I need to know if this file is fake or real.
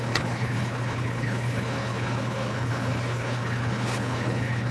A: fake